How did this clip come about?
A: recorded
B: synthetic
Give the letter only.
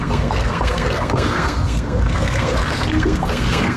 B